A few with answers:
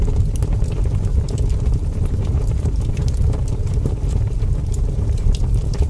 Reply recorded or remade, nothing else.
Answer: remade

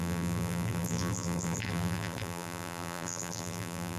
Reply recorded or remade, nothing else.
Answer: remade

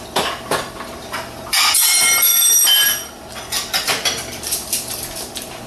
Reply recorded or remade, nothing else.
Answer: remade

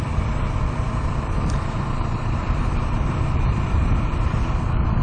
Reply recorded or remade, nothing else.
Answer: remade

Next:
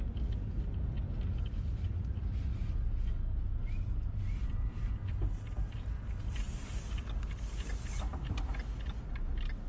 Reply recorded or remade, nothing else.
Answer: recorded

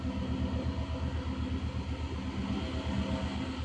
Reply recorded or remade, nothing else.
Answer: recorded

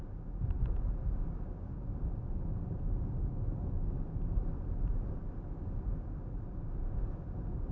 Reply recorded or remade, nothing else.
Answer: recorded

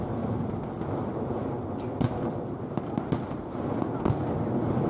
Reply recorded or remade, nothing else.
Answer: recorded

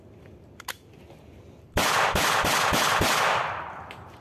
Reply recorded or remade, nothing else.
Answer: recorded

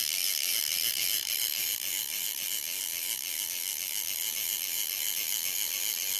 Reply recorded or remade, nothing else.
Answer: remade